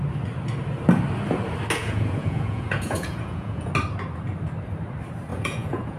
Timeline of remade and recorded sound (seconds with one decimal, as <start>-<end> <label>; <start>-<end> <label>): 0.0-1.8 recorded; 1.8-3.7 remade; 3.7-5.3 recorded; 5.3-6.0 remade